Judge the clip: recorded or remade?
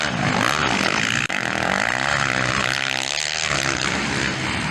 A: recorded